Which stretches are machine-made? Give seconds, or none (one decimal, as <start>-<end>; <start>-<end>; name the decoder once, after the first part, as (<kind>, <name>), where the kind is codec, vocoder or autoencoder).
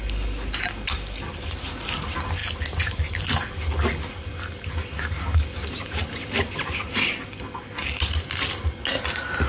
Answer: none